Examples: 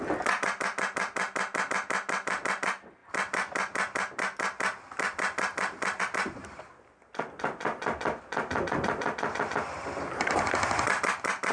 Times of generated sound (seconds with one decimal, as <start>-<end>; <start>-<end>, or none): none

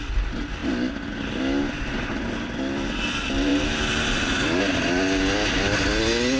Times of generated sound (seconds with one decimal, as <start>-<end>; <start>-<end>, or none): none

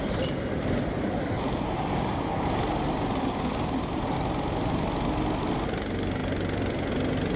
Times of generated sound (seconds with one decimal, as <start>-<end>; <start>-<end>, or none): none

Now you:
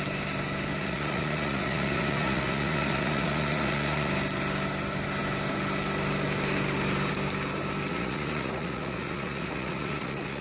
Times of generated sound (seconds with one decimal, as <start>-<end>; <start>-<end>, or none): 0.8-4.1; 7.9-10.4

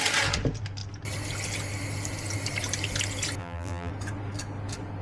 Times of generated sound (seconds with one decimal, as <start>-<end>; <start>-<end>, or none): 3.4-3.9

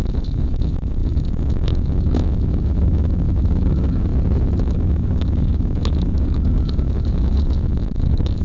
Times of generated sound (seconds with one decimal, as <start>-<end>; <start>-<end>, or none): 0.0-4.1; 4.6-8.4

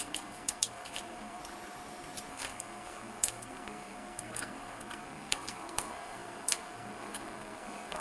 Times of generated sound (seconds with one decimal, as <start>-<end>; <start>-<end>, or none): 0.0-1.4; 2.3-8.0

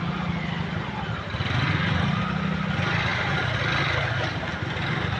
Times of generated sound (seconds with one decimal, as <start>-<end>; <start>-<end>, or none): none